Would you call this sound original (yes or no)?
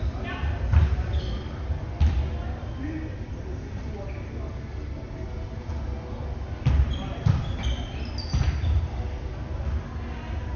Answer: yes